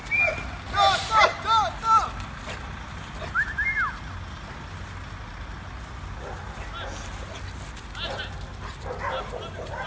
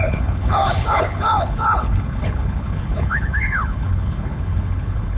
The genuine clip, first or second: first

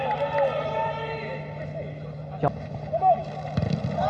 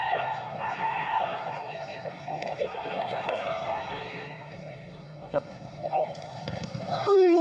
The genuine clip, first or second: first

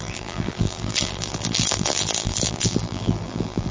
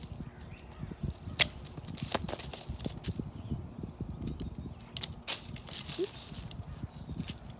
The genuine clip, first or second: second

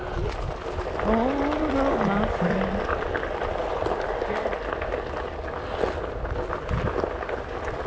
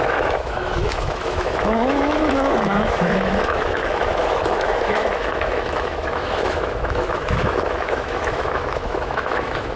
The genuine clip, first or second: first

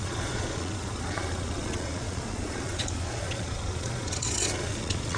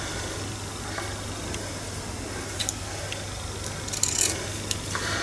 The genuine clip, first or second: second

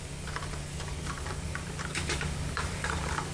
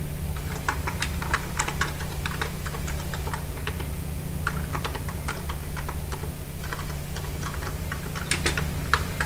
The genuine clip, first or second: second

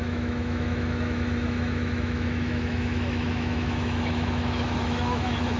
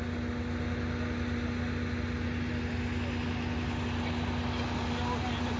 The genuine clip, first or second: second